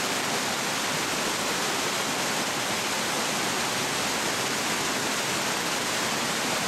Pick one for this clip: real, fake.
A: real